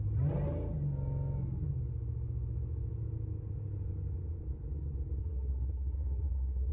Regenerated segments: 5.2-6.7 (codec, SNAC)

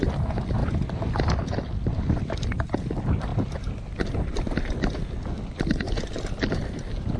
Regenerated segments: none